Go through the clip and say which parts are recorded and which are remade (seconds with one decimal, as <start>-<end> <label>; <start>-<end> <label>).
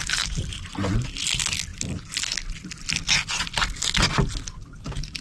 0.0-5.2 recorded